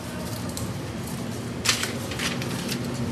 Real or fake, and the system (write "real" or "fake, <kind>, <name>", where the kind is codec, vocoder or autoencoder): real